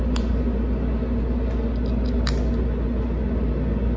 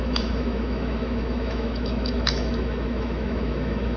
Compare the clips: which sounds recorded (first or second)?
first